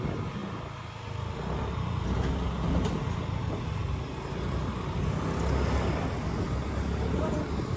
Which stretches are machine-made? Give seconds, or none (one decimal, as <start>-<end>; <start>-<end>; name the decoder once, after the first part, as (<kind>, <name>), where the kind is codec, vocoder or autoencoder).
none